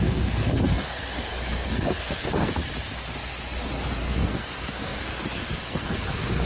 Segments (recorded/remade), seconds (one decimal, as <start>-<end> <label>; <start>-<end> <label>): 0.0-2.6 remade; 2.6-4.0 recorded; 4.0-6.5 remade